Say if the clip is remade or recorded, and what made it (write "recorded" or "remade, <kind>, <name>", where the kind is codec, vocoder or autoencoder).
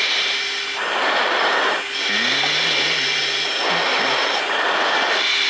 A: recorded